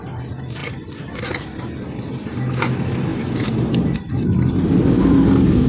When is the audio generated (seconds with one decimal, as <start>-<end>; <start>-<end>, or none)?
none